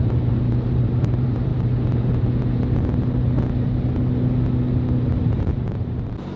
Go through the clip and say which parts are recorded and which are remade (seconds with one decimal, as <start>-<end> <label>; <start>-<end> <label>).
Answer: 0.0-1.5 remade; 1.5-5.3 recorded; 5.3-6.4 remade